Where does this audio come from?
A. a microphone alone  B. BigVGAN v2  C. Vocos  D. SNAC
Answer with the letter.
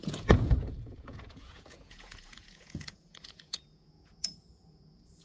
C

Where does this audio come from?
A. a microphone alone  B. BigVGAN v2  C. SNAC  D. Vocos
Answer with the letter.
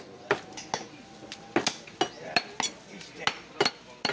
A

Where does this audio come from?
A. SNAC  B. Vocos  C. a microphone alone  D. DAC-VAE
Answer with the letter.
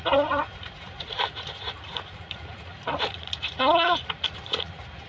B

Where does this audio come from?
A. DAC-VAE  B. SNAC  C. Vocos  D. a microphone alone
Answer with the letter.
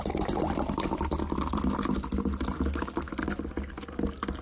D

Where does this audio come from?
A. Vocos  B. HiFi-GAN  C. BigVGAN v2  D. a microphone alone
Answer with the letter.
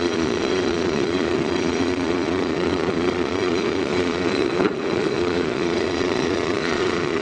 A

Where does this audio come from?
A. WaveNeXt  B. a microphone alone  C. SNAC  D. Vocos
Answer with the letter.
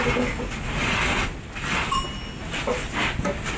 B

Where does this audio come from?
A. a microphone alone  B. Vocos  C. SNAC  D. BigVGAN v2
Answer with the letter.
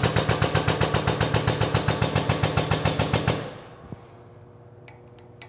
A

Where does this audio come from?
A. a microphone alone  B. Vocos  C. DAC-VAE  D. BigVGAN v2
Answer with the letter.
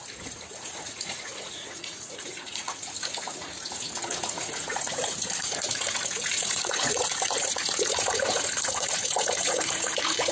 B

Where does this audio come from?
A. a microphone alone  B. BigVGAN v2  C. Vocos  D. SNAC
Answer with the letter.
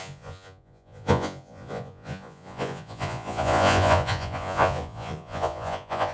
C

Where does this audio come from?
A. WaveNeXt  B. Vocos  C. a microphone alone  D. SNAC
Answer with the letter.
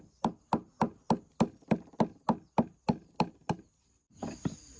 C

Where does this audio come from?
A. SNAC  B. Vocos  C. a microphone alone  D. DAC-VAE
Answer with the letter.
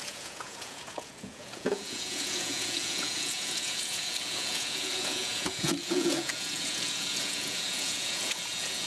B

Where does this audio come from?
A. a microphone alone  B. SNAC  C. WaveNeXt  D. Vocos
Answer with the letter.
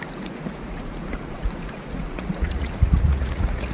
D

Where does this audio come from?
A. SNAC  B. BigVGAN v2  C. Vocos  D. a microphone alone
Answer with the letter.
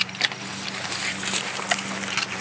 D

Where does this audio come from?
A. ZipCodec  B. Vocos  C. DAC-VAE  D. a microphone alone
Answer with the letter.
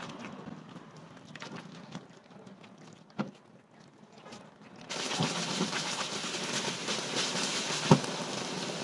D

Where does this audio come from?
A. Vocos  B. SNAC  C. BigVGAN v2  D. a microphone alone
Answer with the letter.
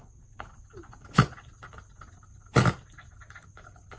D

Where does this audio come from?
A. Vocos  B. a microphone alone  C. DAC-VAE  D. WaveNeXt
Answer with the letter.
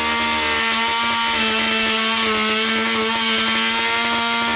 B